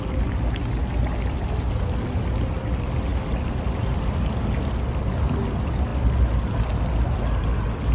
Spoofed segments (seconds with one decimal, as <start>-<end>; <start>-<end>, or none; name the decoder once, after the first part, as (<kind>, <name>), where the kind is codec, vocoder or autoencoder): none